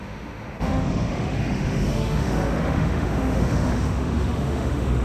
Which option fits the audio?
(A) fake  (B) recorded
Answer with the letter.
A